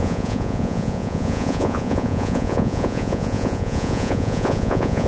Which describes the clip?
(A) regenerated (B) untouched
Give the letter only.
A